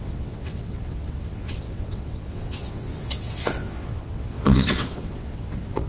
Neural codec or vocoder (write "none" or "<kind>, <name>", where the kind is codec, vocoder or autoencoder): vocoder, WaveNeXt